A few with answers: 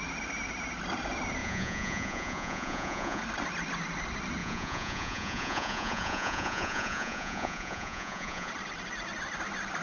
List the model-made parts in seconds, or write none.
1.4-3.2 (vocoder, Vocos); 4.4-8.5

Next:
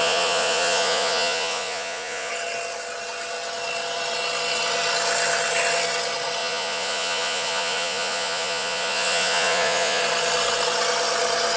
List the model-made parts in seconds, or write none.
0.0-2.3 (vocoder, Vocos); 6.4-10.0